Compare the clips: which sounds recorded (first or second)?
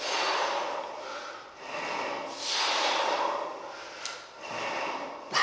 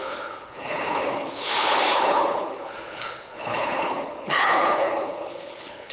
first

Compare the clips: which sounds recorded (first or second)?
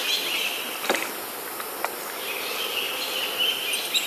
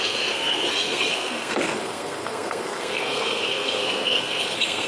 first